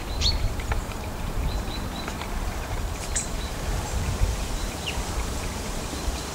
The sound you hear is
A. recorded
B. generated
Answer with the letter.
B